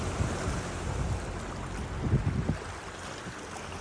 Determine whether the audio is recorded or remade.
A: recorded